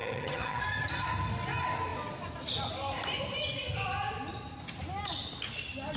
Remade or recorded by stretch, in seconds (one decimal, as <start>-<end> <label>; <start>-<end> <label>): 0.0-0.6 remade; 0.6-6.0 recorded